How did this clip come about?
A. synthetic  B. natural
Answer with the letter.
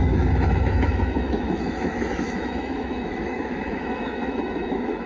A